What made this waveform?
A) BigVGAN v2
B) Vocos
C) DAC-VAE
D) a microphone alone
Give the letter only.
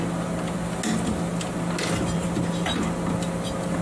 D